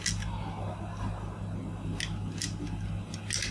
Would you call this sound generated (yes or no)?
no